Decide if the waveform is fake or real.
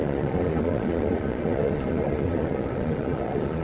fake